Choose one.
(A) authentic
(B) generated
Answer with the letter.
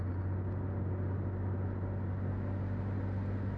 A